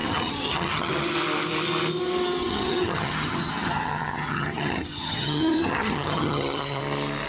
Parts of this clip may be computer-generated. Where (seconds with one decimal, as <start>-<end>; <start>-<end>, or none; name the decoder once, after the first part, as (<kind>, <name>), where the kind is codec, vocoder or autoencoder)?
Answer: 0.0-0.9 (vocoder, HiFi-GAN); 2.4-6.8